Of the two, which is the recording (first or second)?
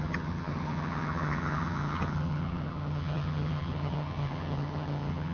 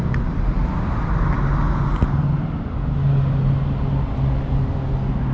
second